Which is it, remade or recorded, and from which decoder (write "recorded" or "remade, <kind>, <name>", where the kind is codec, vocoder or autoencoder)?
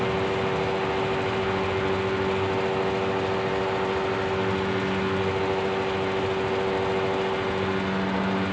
recorded